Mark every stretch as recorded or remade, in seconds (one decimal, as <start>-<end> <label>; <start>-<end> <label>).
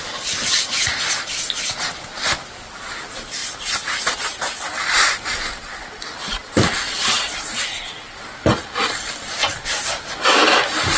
0.0-3.4 recorded; 3.4-5.7 remade; 5.7-6.4 recorded; 6.4-7.4 remade; 7.4-9.4 recorded; 9.4-10.4 remade; 10.4-11.0 recorded